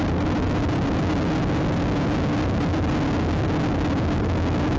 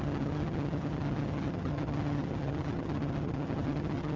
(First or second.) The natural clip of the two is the first